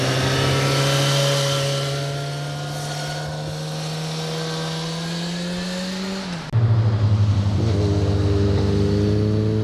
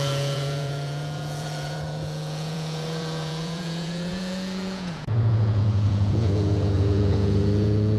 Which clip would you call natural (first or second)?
first